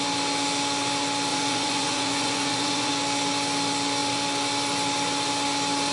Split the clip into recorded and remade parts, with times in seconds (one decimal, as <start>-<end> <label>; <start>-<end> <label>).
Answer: 0.0-1.3 recorded; 1.3-2.9 remade; 2.9-5.9 recorded